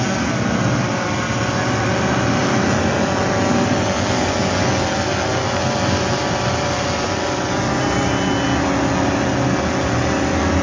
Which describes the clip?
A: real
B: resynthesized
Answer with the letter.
A